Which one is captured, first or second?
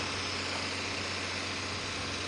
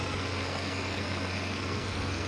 first